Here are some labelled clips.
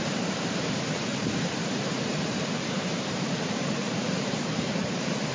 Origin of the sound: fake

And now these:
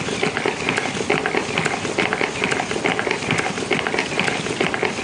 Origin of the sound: real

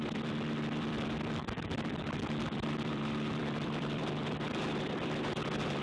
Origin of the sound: fake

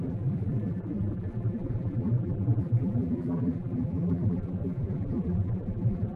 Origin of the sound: fake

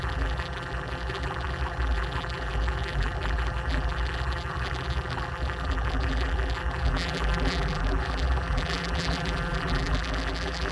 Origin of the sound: fake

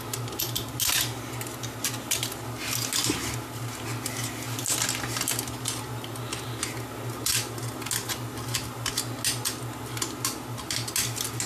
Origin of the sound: real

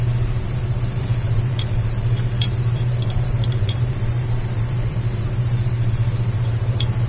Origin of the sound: fake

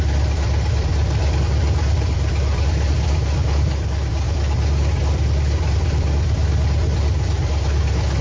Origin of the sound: fake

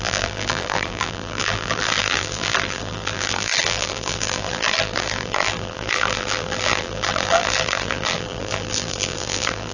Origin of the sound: fake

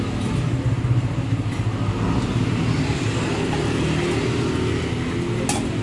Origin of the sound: real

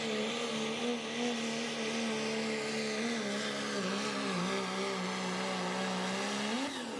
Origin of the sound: real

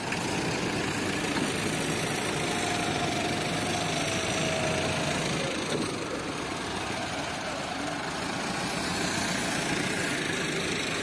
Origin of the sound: real